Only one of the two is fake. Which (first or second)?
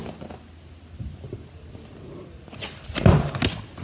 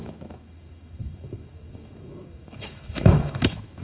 second